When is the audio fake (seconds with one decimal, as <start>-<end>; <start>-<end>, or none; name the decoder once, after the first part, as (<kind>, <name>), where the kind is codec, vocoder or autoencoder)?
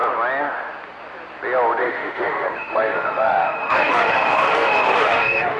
1.8-5.6 (autoencoder, DAC-VAE)